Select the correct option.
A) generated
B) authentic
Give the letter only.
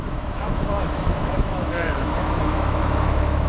A